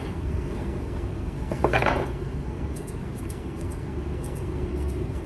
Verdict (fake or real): fake